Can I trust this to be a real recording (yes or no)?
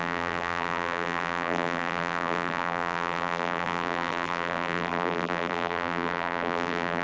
no